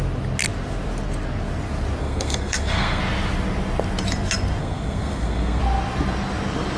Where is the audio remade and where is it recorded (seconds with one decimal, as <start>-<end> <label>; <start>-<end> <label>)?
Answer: 0.0-2.0 recorded; 2.0-3.0 remade; 3.0-4.6 recorded; 4.6-5.6 remade; 5.6-6.8 recorded